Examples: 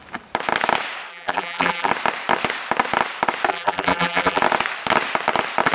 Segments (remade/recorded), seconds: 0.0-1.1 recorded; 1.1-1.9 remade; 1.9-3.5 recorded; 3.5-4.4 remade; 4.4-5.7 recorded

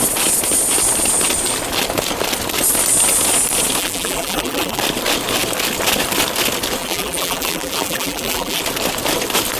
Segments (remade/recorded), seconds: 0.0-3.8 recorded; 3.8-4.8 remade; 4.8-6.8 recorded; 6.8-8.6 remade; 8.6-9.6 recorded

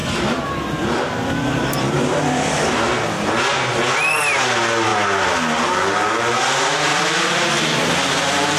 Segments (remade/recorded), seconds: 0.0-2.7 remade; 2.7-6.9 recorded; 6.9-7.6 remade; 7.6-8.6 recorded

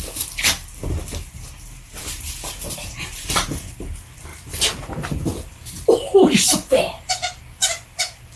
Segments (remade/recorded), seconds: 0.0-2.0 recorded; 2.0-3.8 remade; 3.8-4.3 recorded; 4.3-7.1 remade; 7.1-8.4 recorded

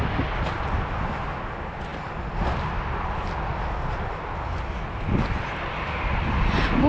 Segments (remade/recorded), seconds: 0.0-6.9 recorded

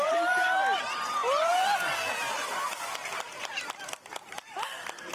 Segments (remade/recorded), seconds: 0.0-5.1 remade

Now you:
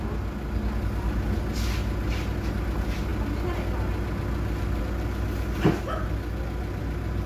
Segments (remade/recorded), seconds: 0.0-7.3 recorded

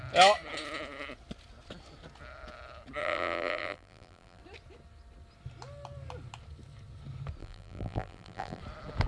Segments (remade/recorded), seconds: 0.0-3.0 recorded; 3.0-4.4 remade; 4.4-7.4 recorded; 7.4-8.6 remade; 8.6-9.1 recorded